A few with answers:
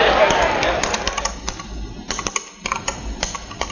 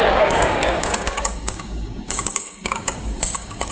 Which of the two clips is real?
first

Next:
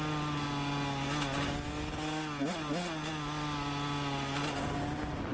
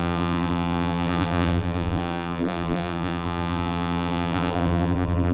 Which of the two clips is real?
first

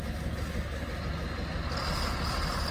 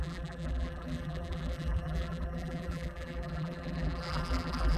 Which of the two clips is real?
first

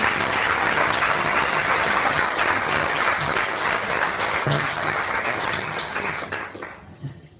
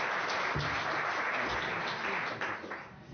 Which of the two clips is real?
second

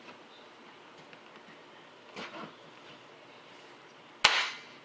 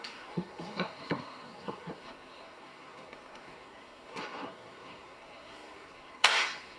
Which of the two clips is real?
first